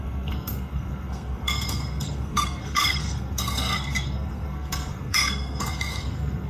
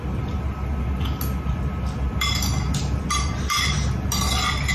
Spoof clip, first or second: first